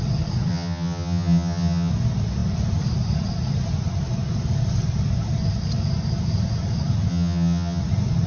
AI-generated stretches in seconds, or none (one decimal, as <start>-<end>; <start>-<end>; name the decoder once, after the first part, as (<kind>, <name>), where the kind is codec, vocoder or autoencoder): 0.5-1.9 (vocoder, HiFi-GAN); 7.1-7.8